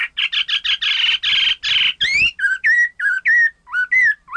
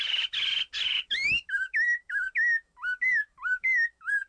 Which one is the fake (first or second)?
second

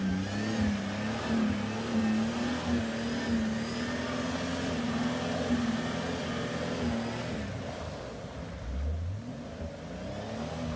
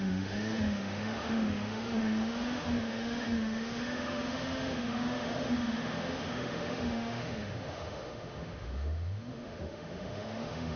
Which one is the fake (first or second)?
second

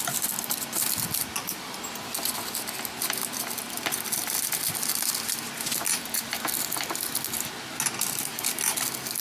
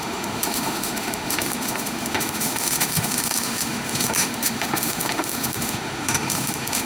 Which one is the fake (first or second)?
second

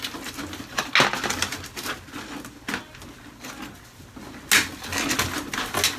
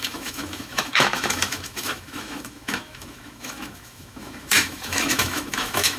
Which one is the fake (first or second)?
second